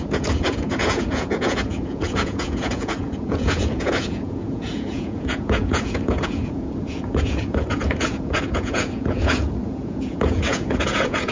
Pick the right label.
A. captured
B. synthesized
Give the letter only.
B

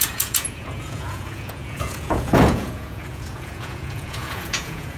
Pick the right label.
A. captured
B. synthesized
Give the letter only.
B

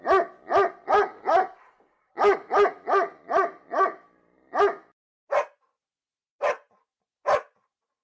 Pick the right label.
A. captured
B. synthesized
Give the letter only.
A